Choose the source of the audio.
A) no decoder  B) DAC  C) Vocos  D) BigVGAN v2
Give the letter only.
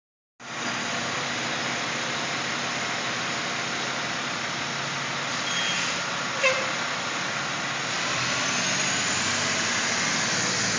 A